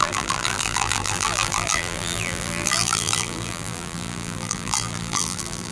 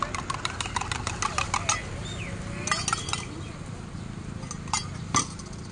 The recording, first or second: second